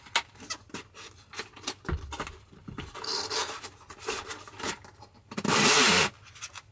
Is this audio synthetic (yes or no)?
no